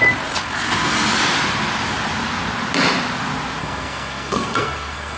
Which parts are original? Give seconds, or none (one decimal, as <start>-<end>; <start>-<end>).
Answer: 0.0-3.6